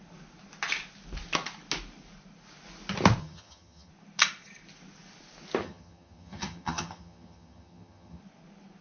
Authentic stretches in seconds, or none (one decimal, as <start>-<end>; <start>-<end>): 0.0-3.2; 3.9-5.6; 8.2-8.8